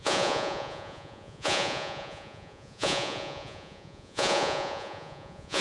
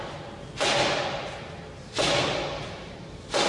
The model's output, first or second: first